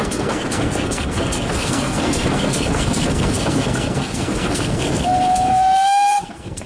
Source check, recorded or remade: remade